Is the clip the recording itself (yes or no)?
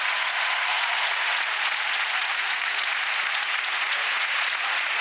no